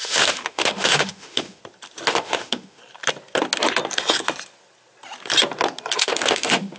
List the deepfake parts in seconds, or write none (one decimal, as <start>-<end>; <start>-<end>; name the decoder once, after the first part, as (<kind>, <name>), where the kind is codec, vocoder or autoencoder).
0.0-1.6 (autoencoder, DAC-VAE); 2.1-2.8; 6.0-6.8